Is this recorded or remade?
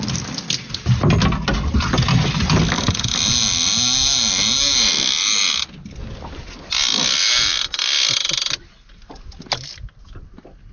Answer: recorded